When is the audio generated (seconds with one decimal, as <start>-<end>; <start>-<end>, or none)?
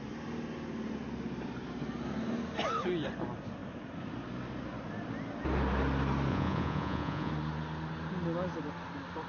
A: 6.3-7.3